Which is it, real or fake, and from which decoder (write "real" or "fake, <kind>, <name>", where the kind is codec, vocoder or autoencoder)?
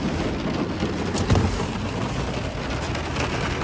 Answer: real